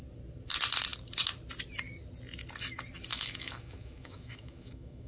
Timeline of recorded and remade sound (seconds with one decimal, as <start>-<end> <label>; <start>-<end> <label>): 0.0-3.1 recorded; 3.1-5.1 remade